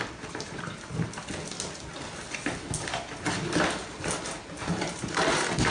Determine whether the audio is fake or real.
real